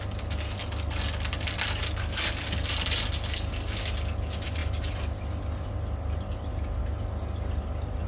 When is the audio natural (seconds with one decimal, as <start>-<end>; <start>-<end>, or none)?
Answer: 0.0-8.1